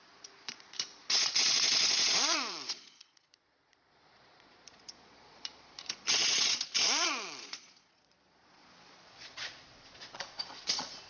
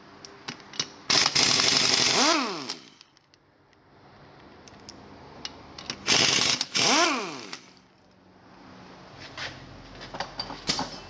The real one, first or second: second